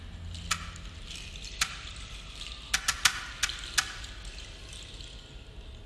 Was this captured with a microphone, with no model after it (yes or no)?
yes